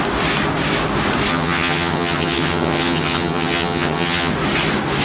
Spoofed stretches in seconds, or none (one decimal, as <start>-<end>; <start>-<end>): 1.3-4.3